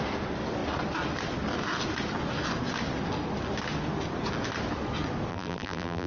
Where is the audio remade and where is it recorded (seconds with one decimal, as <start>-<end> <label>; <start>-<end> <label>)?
0.0-5.3 recorded; 5.3-6.1 remade